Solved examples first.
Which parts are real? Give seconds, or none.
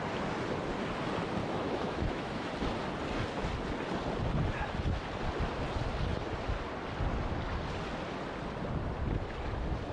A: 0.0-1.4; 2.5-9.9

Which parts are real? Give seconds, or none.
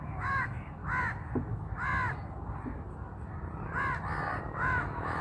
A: 0.8-1.5; 1.9-4.4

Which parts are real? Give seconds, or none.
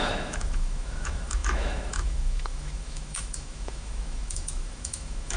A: none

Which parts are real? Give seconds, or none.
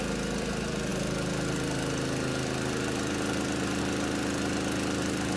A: 0.0-5.4